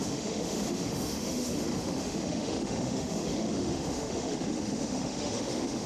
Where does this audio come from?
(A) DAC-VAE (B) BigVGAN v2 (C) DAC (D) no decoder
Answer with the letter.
A